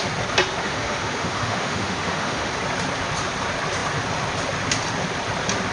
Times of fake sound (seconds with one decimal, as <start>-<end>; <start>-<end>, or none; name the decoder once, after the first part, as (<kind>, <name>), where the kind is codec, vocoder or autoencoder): 0.6-2.5 (autoencoder, DAC-VAE)